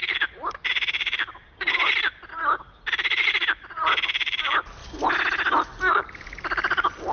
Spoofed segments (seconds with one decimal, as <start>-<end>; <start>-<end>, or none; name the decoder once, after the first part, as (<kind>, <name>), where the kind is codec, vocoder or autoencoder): 0.0-4.8 (vocoder, BigVGAN v2); 5.9-7.1